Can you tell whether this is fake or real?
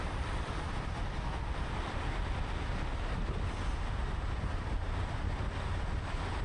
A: real